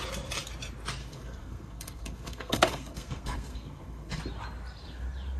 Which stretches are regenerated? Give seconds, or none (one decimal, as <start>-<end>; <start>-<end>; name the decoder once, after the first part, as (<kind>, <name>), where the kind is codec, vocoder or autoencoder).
1.0-4.2 (codec, SNAC)